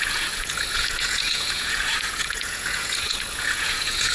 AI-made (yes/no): yes